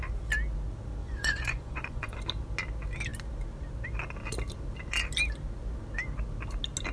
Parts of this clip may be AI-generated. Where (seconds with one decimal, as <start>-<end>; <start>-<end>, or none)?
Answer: 1.0-2.2